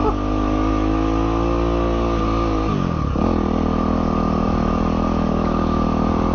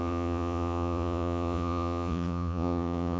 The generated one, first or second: second